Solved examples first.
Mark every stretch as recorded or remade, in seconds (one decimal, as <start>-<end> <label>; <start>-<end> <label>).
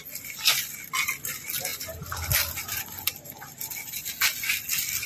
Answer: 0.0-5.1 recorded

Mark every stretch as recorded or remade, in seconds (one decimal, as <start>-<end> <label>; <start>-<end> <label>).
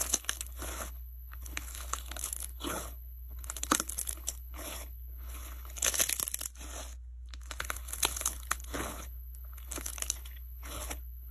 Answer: 0.0-6.0 remade; 6.0-7.6 recorded; 7.6-11.3 remade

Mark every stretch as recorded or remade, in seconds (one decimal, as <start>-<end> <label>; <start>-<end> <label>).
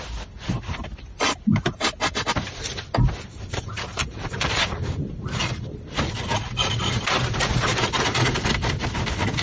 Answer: 0.0-3.9 recorded; 3.9-6.1 remade; 6.1-9.4 recorded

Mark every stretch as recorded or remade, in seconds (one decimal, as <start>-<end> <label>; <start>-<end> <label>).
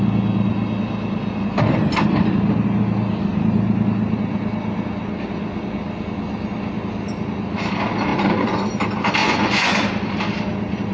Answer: 0.0-8.1 recorded; 8.1-8.7 remade; 8.7-9.2 recorded; 9.2-9.8 remade; 9.8-10.9 recorded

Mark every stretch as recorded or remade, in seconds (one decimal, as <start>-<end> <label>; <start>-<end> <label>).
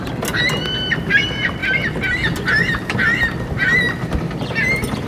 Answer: 0.0-5.1 recorded